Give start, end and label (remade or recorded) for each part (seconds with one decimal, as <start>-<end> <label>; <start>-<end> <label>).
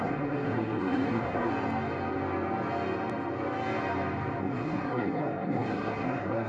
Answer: 0.0-1.5 remade; 1.5-4.4 recorded; 4.4-6.5 remade